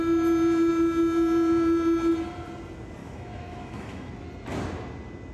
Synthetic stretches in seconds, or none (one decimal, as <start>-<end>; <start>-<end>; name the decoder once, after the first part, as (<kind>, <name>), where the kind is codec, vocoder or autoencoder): 3.0-4.1 (autoencoder, DAC-VAE)